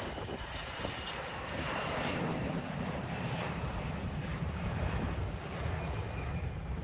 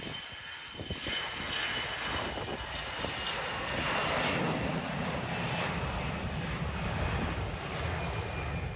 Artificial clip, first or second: first